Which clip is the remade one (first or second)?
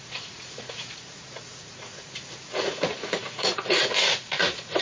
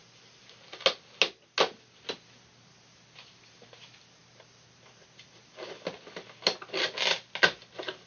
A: first